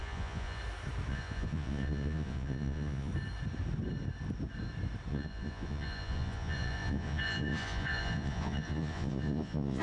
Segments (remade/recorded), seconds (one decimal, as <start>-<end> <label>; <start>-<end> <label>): 0.0-0.6 remade; 0.6-1.1 recorded; 1.1-3.1 remade; 3.1-5.1 recorded; 5.1-9.8 remade

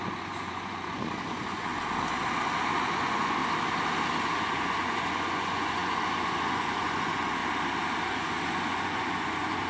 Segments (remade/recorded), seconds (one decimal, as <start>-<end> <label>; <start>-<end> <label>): 0.0-1.7 remade; 1.7-2.8 recorded; 2.8-3.4 remade; 3.4-4.4 recorded; 4.4-7.4 remade; 7.4-8.1 recorded; 8.1-9.7 remade

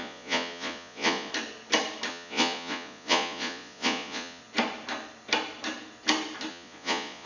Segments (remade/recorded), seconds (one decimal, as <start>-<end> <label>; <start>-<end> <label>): 0.0-1.3 remade; 1.3-2.1 recorded; 2.1-4.4 remade; 4.4-6.5 recorded; 6.5-7.3 remade

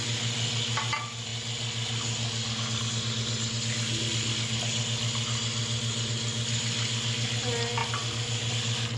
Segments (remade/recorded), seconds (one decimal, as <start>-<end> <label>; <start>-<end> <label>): 0.0-9.0 recorded

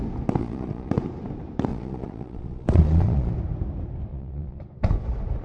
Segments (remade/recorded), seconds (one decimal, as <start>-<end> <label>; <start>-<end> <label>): 0.0-0.4 recorded; 0.4-0.9 remade; 0.9-1.7 recorded; 1.7-3.3 remade; 3.3-4.1 recorded; 4.1-4.6 remade; 4.6-5.4 recorded